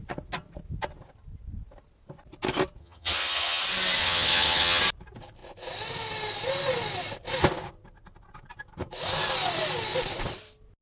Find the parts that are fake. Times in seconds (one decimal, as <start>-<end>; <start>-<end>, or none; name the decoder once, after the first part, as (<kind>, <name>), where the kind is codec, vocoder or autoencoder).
2.8-3.6 (vocoder, HiFi-GAN); 4.0-4.8